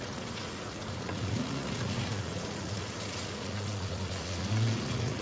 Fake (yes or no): yes